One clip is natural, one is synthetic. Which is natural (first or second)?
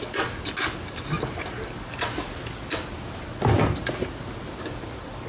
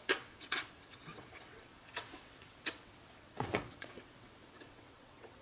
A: first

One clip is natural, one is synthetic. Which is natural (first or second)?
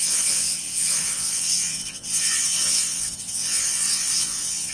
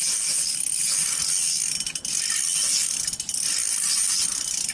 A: second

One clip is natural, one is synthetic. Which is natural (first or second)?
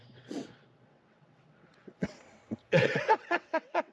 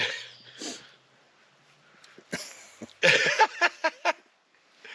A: second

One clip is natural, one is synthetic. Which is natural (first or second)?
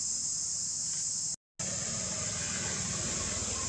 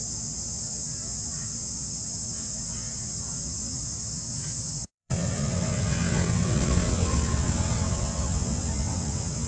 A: first